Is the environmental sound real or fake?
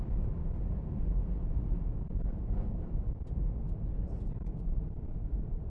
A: real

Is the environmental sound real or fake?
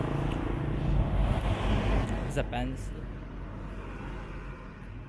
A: real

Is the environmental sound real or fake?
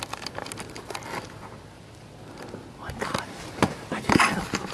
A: real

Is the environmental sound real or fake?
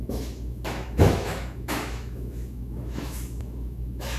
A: fake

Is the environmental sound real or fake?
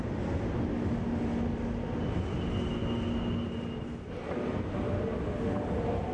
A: real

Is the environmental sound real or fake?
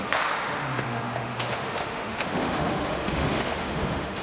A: fake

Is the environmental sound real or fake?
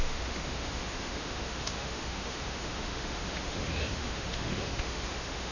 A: fake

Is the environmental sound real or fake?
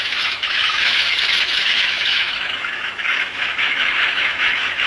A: fake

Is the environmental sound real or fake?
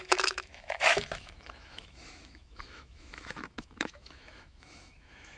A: fake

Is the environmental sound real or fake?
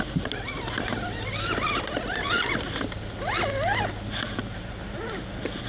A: real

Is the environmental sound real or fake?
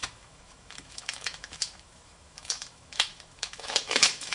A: fake